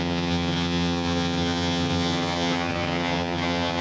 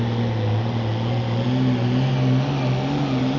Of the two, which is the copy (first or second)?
first